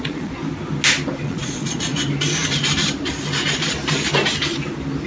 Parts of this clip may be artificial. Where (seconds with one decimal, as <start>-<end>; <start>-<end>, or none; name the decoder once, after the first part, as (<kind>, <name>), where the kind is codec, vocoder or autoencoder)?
0.0-0.4 (vocoder, Vocos); 1.2-1.9

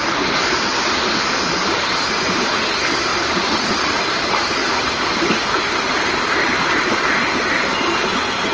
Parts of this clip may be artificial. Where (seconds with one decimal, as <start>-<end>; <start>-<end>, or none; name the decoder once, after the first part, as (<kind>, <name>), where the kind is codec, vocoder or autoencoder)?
none

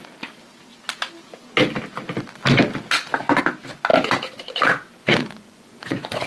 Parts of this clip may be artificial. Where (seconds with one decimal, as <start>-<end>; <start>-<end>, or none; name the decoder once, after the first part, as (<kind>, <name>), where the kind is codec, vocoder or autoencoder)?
5.0-6.3 (vocoder, Vocos)

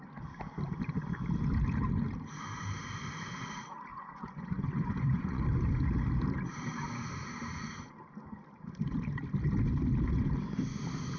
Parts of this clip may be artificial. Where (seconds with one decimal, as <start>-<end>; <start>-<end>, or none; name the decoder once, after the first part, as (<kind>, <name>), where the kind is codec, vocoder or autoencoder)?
3.9-5.4 (vocoder, Vocos)

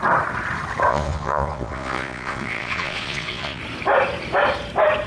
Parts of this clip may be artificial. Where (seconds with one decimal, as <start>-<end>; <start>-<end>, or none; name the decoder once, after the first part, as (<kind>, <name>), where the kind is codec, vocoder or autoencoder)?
0.9-3.6 (vocoder, Vocos)

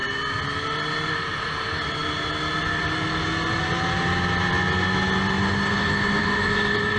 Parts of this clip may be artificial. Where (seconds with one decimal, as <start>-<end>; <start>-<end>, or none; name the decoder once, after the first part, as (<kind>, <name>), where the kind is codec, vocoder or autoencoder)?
none

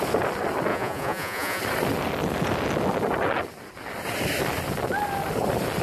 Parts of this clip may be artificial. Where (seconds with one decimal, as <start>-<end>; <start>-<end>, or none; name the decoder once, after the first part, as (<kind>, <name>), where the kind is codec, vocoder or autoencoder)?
0.7-1.6 (vocoder, Vocos)

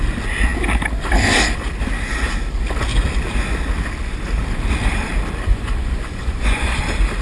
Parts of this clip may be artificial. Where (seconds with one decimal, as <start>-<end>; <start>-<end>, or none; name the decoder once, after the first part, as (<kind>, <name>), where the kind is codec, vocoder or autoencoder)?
5.5-6.8 (vocoder, Vocos)